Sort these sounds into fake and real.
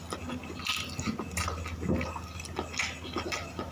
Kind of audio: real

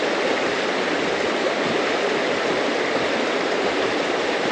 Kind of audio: real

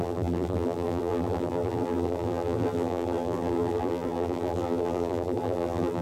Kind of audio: fake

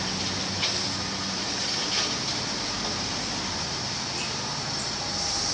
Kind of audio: real